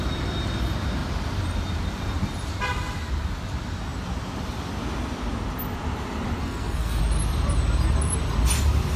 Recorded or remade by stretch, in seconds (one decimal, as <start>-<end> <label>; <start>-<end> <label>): 0.0-6.4 recorded; 6.4-7.0 remade; 7.0-9.0 recorded